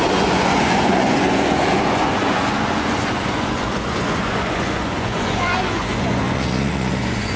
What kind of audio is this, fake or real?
fake